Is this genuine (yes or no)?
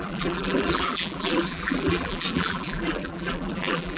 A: no